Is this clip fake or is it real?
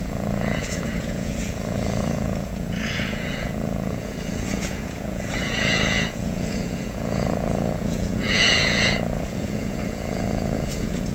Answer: fake